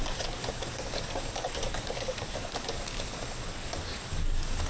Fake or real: fake